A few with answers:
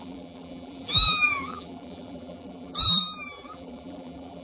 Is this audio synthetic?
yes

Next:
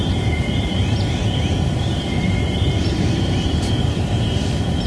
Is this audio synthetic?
yes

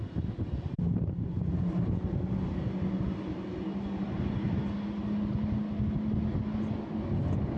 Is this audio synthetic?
no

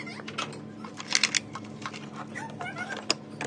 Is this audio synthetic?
no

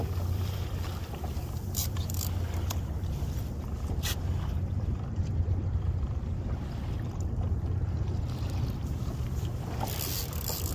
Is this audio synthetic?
yes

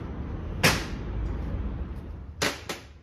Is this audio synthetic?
no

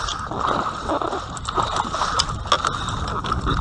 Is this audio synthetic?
no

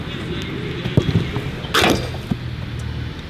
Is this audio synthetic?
no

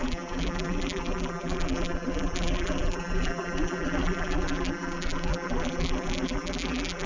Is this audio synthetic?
yes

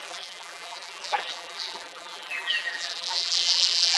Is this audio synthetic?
yes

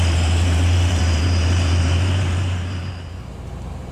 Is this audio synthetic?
yes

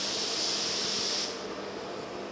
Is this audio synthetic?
no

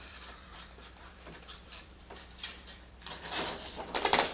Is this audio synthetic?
yes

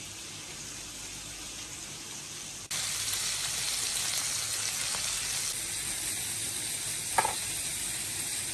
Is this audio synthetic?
no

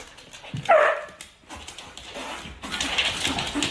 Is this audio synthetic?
no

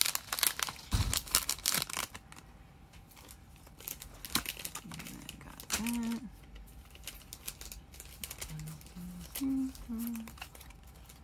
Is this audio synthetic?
no